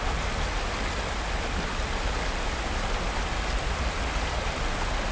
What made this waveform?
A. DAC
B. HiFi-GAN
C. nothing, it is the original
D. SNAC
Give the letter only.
C